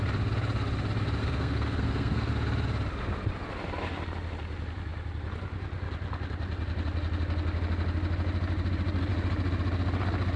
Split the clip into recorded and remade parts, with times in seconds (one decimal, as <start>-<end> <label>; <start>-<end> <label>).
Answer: 0.0-1.2 recorded; 1.2-2.3 remade; 2.3-10.4 recorded